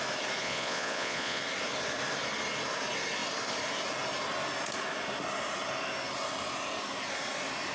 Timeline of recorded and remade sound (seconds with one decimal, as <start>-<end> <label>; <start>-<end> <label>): 0.0-0.4 recorded; 0.4-1.4 remade; 1.4-7.7 recorded